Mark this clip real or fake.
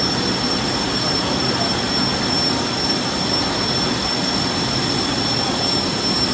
real